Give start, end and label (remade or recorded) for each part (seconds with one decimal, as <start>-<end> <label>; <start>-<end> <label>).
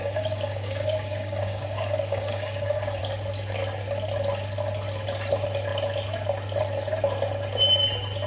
0.0-3.0 remade; 3.0-8.3 recorded